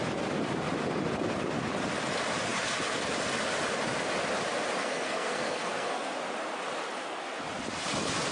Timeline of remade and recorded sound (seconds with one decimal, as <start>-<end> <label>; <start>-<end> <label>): 0.0-4.8 recorded; 4.8-6.1 remade; 6.1-8.3 recorded